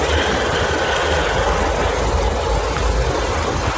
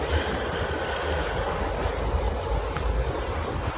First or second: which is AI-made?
second